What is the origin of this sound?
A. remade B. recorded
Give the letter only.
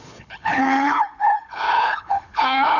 A